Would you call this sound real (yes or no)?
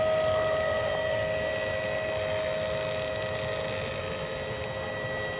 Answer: yes